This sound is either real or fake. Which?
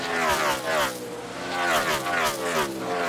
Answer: real